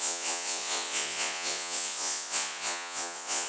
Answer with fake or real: fake